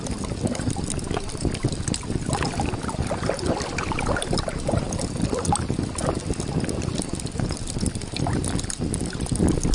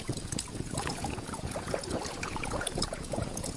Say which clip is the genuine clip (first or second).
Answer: first